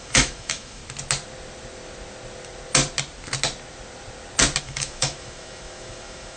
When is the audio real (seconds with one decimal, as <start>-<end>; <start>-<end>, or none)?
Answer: 0.8-4.6